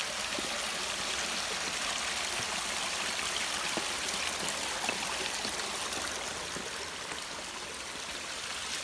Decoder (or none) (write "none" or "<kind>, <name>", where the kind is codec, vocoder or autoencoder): none